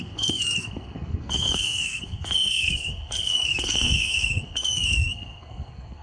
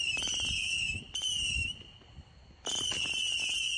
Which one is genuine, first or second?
second